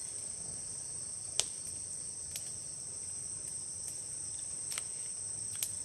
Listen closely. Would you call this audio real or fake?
real